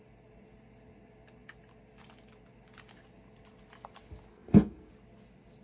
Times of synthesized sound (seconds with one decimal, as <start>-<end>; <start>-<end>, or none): 4.3-4.9